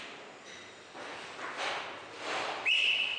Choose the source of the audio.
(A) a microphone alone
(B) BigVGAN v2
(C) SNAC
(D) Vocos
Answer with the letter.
A